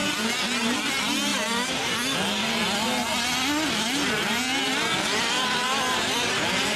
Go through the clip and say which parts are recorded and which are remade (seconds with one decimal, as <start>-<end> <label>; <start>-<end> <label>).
0.0-6.8 recorded